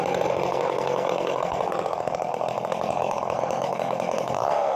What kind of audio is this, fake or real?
fake